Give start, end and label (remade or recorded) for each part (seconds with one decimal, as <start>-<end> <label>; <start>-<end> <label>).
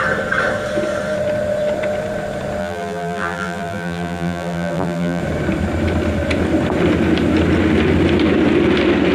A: 0.0-2.6 recorded; 2.6-5.2 remade; 5.2-9.1 recorded